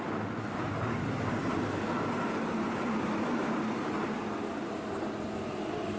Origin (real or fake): real